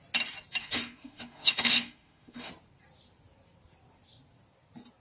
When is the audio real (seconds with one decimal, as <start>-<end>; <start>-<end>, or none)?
0.0-0.6; 2.5-5.0